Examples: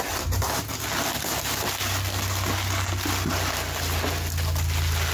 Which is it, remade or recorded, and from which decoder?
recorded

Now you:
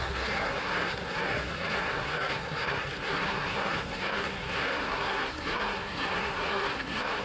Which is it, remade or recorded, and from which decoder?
remade, codec, SNAC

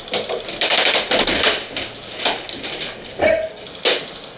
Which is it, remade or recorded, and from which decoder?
recorded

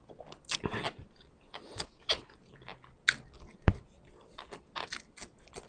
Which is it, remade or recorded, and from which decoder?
recorded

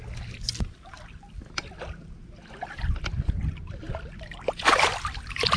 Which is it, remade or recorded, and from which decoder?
recorded